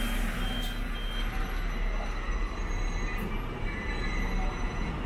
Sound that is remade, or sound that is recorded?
recorded